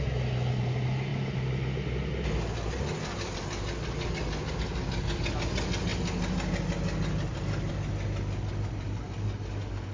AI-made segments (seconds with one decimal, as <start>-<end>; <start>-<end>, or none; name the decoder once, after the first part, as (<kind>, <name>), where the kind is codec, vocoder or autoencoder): none